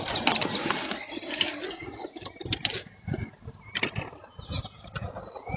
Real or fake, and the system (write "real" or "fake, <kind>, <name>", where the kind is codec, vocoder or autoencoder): real